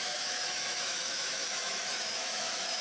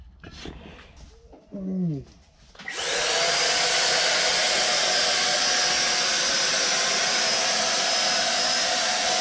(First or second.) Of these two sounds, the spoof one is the first